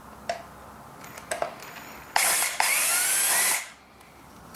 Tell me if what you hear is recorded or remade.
remade